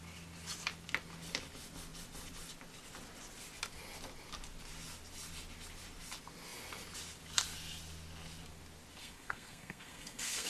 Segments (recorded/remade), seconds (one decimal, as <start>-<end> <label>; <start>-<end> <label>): 0.0-9.0 recorded; 9.0-10.5 remade